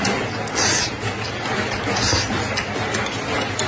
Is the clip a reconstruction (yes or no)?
no